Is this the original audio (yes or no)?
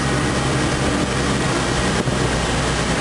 no